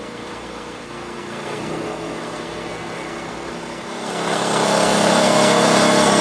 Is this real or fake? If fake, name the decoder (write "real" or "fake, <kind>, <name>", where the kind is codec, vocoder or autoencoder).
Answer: fake, codec, SNAC